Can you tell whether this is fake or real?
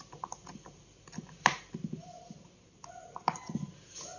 real